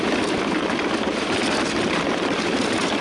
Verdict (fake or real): real